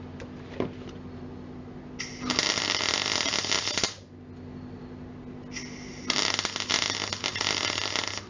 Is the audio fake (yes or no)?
no